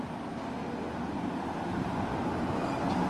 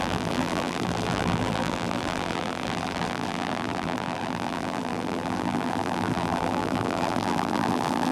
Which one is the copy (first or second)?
second